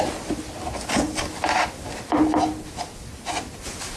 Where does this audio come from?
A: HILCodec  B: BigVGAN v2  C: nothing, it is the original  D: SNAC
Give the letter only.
C